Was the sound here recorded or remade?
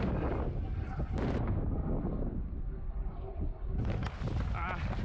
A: recorded